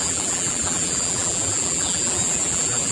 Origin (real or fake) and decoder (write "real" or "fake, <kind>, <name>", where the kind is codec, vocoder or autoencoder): fake, vocoder, BigVGAN v2